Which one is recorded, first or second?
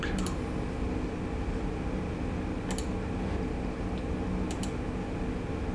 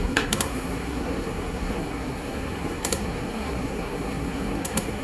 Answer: first